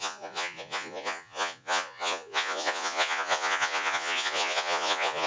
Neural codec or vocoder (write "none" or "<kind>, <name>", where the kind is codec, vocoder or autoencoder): vocoder, Vocos